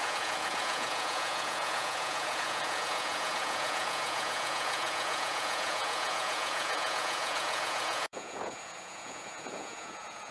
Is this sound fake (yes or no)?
yes